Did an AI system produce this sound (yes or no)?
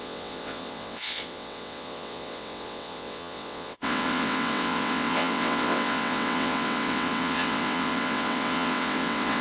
yes